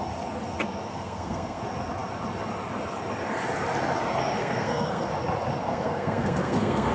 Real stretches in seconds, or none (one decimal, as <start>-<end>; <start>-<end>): 0.0-0.9; 1.6-4.4; 5.1-5.6